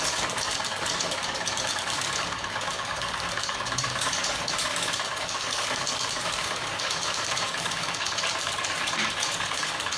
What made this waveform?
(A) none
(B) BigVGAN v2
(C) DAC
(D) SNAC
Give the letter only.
C